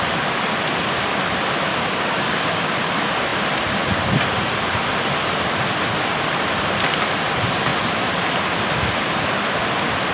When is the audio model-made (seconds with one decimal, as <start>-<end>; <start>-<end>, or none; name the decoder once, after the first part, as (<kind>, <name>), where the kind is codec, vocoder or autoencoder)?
1.7-2.7 (codec, DAC)